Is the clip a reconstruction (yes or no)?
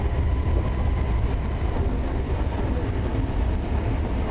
no